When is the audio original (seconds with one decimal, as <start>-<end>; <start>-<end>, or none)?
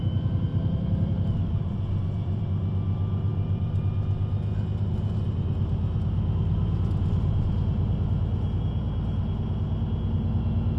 0.0-0.5; 2.4-3.3; 3.8-10.8